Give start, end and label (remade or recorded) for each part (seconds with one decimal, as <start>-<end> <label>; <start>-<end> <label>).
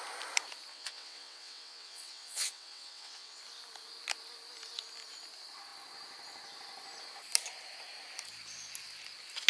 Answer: 0.0-0.7 recorded; 0.7-3.4 remade; 3.4-9.5 recorded